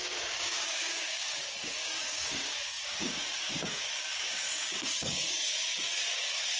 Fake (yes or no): yes